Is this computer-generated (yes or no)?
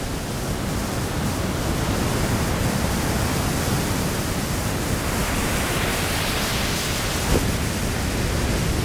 no